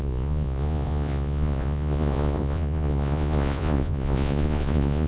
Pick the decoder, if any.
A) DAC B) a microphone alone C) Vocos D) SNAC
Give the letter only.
C